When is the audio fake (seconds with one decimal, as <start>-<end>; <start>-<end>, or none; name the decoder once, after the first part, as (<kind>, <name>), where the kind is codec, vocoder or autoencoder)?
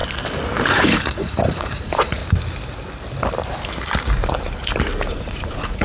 0.6-2.2 (vocoder, Vocos); 5.1-5.8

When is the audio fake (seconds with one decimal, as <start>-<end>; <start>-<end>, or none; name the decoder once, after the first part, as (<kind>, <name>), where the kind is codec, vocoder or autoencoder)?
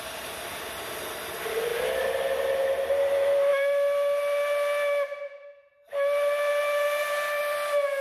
none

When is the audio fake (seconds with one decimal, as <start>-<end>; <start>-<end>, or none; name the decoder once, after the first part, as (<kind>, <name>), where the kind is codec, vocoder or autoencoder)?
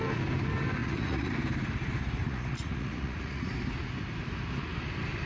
0.8-1.3 (vocoder, Vocos); 2.2-3.5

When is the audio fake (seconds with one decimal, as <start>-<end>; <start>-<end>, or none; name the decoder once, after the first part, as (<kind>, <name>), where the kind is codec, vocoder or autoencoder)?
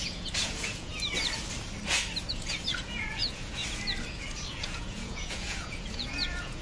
0.0-0.9 (vocoder, Vocos); 2.3-3.6; 4.5-6.6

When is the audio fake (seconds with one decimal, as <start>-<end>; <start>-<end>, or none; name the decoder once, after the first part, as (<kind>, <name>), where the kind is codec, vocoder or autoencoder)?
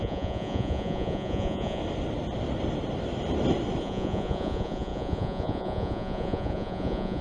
0.0-1.8 (vocoder, Vocos); 3.8-7.2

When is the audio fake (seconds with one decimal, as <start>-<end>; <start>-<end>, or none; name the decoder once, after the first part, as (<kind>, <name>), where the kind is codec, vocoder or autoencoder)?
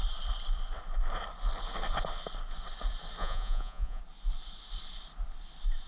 3.2-4.0 (vocoder, Vocos)